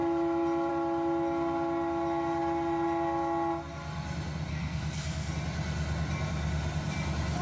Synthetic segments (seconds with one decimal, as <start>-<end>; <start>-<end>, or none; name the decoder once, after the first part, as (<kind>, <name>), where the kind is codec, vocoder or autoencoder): 4.5-5.3 (codec, SNAC)